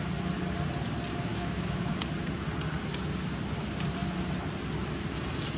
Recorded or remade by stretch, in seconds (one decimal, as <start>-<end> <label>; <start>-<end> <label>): 0.0-1.3 recorded; 1.3-1.9 remade; 1.9-5.6 recorded